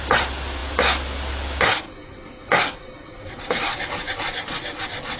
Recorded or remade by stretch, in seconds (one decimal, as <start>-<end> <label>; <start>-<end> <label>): 0.0-5.2 recorded